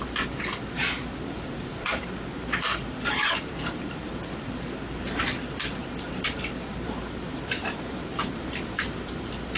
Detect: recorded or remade remade